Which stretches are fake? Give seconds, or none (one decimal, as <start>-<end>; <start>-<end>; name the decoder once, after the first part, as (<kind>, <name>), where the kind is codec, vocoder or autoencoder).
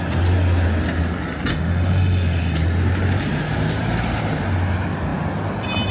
1.5-2.5 (autoencoder, DAC-VAE)